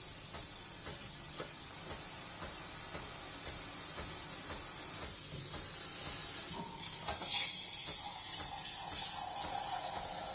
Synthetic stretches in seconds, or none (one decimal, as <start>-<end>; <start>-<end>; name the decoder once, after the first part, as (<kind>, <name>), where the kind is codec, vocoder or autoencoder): 0.9-1.7 (vocoder, HiFi-GAN)